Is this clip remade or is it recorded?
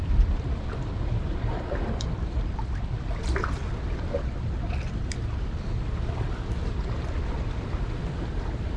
recorded